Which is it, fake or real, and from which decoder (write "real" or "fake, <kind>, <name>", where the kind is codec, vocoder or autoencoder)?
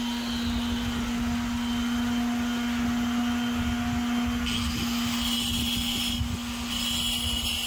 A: real